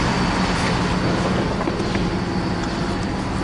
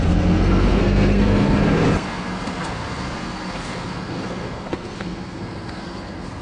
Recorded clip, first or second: first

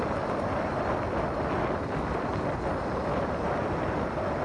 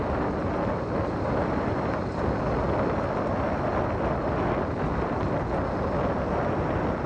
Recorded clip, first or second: second